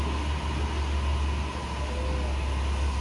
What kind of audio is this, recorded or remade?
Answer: recorded